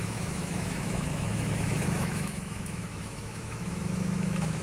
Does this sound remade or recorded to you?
remade